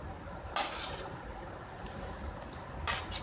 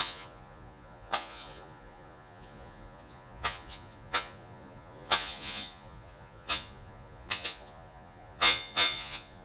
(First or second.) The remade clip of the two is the second